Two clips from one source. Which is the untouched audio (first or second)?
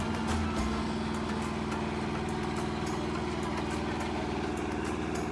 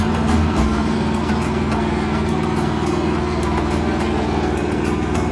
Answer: first